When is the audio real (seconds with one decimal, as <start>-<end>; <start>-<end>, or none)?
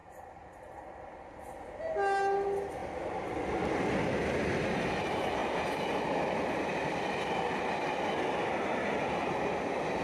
1.4-2.8; 3.5-10.0